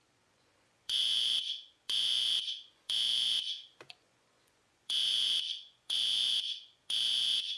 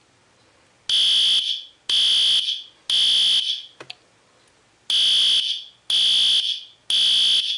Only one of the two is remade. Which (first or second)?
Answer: first